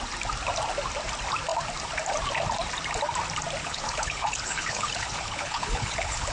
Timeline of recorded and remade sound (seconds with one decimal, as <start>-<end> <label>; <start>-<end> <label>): 0.0-3.6 recorded; 3.6-6.3 remade